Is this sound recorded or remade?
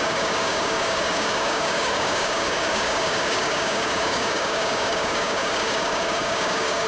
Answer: remade